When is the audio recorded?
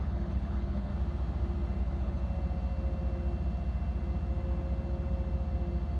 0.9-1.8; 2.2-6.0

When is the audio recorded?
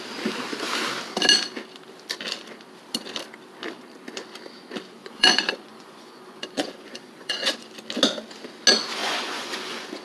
0.0-5.0; 7.7-9.0